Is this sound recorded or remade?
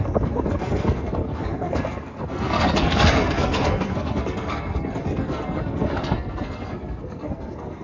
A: remade